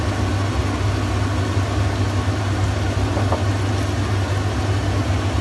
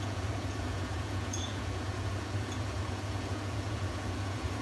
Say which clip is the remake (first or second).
second